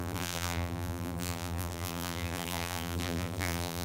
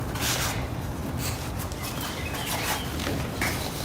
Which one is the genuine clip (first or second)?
second